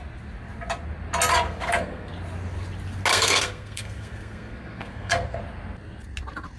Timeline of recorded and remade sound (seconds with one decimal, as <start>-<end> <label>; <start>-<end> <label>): 0.0-1.3 recorded; 1.3-2.1 remade; 2.1-3.1 recorded; 3.1-5.4 remade; 5.4-6.6 recorded